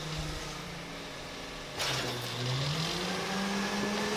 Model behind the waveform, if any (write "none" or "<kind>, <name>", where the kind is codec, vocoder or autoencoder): none